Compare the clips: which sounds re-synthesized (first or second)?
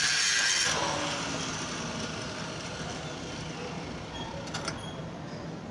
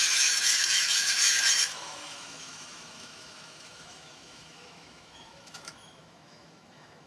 second